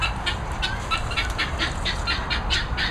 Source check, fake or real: real